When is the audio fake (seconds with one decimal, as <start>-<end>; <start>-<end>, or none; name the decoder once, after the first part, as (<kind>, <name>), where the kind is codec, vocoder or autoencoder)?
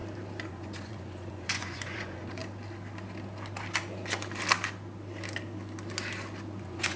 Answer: 0.5-2.4 (vocoder, Vocos); 6.6-7.0